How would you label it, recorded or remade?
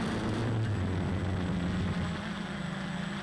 recorded